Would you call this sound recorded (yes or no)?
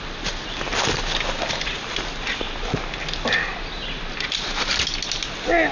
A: yes